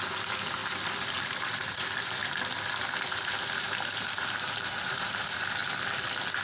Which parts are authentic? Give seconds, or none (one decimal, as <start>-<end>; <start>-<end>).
0.6-1.2; 2.2-3.6; 5.6-6.4